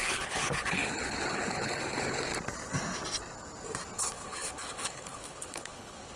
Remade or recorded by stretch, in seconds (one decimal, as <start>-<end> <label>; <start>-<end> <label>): 0.0-2.3 remade; 2.3-4.0 recorded; 4.0-6.2 remade